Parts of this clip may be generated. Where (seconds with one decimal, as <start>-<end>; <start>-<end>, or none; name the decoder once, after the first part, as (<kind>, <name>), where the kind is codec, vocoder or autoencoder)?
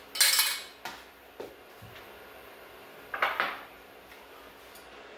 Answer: none